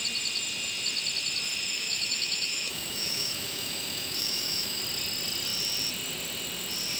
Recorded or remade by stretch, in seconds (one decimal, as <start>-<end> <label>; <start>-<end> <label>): 0.0-1.7 recorded; 1.7-4.8 remade; 4.8-7.0 recorded